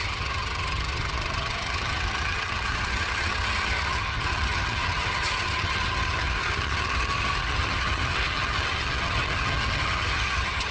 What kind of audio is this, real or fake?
fake